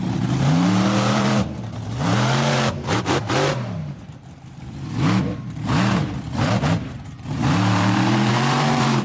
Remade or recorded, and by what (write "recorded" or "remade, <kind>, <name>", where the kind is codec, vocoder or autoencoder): remade, vocoder, BigVGAN v2